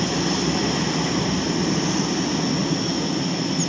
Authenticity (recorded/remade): recorded